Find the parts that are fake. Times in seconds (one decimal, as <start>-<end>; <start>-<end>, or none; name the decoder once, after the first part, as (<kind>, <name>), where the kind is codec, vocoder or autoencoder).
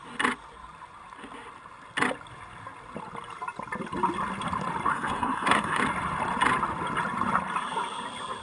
4.9-5.8 (codec, SNAC)